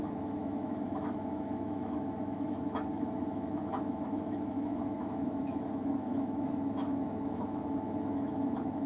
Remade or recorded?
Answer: remade